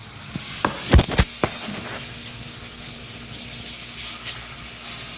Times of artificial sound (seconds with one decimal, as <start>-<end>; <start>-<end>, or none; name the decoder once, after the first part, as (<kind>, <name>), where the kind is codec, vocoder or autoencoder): none